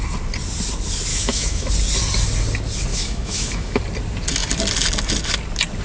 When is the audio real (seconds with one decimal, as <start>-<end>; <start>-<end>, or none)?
0.0-1.1; 1.7-2.9; 3.8-5.8